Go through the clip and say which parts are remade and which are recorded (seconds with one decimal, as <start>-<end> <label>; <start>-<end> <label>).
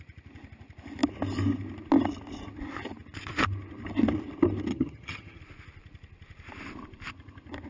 0.0-4.7 recorded; 4.7-5.4 remade; 5.4-7.7 recorded